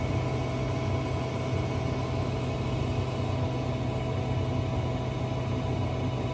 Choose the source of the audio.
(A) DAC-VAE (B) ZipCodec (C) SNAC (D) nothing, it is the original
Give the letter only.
D